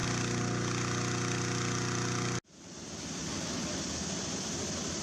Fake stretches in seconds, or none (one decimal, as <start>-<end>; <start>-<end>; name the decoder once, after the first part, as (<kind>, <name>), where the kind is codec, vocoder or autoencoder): none